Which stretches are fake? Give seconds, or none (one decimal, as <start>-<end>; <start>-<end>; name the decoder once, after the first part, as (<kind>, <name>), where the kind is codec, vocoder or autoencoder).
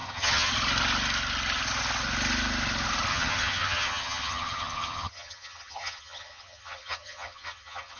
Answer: 0.0-0.5 (vocoder, HiFi-GAN); 3.1-8.0